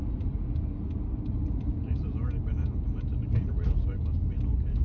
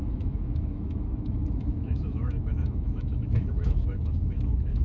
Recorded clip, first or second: first